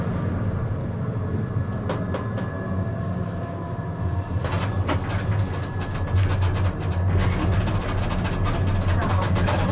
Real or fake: real